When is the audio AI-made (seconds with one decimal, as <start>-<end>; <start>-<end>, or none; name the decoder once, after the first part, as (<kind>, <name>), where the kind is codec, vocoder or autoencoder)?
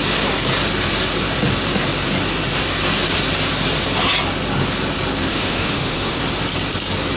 5.3-6.2 (autoencoder, DAC-VAE)